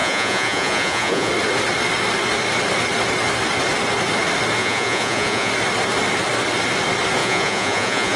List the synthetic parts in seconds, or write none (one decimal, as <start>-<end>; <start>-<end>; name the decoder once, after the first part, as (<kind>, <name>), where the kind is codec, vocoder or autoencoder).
0.0-1.3 (vocoder, Vocos); 4.6-5.5; 7.2-8.2